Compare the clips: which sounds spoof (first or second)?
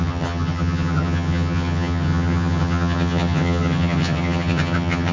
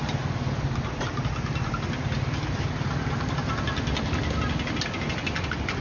first